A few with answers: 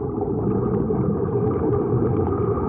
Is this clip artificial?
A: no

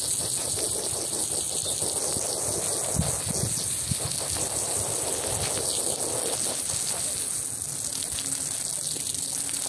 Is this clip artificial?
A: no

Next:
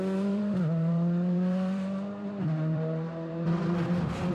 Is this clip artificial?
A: yes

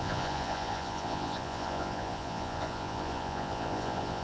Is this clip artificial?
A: yes